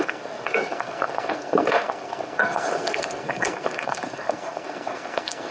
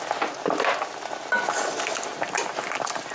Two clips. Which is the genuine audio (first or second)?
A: second